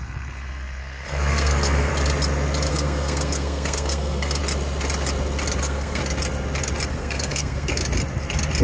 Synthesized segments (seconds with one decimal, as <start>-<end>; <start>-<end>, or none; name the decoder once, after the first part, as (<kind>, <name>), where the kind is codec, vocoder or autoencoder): 0.0-1.9 (codec, SNAC); 2.7-4.4; 5.6-6.0; 6.9-7.8